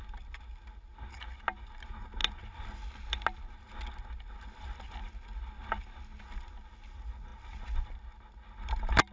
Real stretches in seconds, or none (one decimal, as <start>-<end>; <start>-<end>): 0.0-9.1